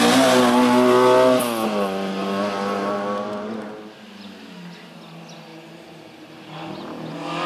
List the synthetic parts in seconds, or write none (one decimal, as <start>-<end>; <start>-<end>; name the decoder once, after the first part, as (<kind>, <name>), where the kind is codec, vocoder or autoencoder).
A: none